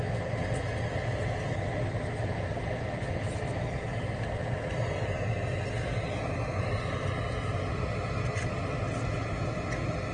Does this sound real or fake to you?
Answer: real